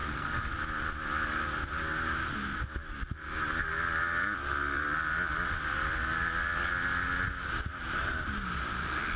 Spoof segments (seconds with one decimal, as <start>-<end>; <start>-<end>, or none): 0.0-0.5